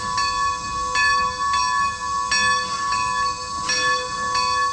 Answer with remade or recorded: recorded